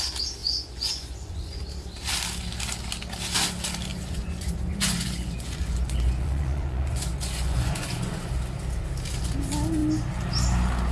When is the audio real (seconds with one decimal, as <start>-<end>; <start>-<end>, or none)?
0.0-0.4; 1.6-3.9; 8.3-10.9